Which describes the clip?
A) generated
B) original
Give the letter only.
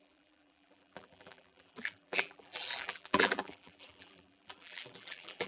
A